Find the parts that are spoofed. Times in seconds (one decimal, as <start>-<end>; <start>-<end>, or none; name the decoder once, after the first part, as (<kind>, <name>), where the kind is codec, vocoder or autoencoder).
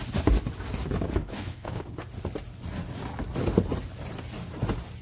1.2-2.0 (codec, HILCodec)